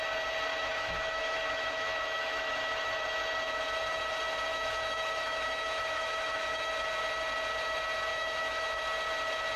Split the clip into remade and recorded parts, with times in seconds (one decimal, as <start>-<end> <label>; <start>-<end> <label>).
0.0-0.5 recorded; 0.5-3.0 remade; 3.0-4.5 recorded; 4.5-6.7 remade; 6.7-8.1 recorded; 8.1-8.8 remade; 8.8-9.6 recorded